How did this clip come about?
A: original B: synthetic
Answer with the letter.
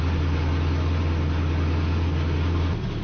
A